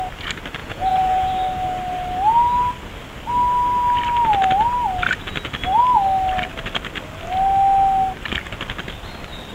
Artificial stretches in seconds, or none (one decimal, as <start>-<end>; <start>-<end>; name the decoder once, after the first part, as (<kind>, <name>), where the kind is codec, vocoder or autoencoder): 0.6-1.3 (vocoder, Vocos)